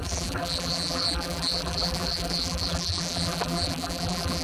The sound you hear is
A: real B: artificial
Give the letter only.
B